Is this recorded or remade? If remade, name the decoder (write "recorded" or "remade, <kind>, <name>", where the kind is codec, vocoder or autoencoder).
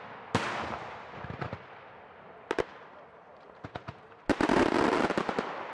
remade, vocoder, BigVGAN v2